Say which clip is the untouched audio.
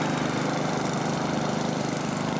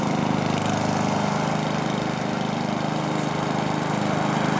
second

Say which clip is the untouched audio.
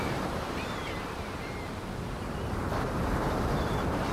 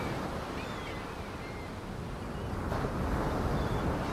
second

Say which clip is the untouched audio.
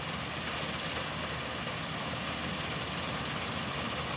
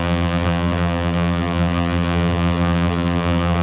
first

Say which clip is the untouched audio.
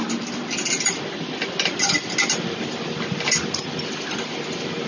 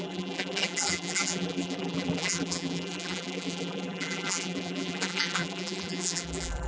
first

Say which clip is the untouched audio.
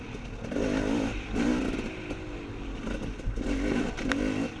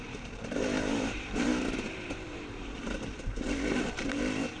first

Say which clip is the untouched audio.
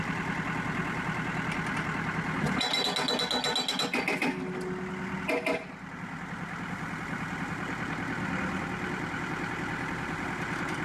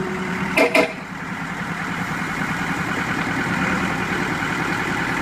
first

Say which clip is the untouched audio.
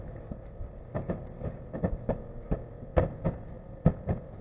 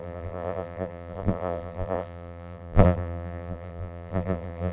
first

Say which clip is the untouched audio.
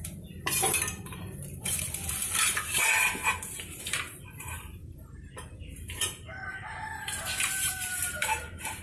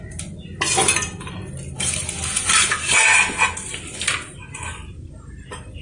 second